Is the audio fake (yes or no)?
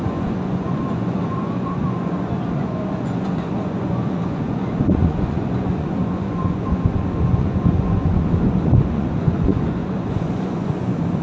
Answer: yes